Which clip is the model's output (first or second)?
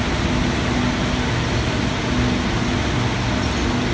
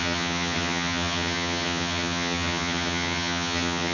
second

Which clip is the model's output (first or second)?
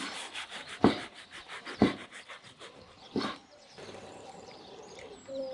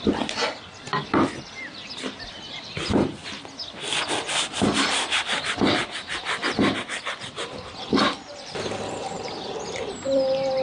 first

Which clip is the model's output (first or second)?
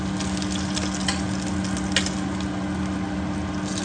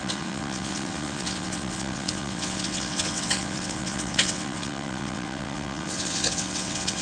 second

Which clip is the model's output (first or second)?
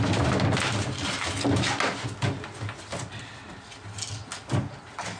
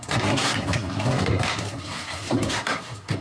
second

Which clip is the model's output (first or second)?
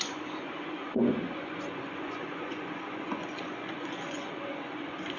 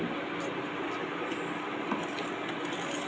first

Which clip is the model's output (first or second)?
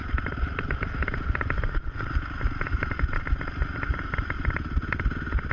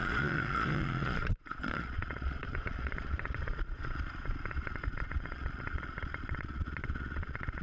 second